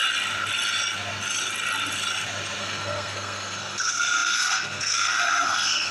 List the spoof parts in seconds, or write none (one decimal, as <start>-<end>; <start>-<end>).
2.6-5.9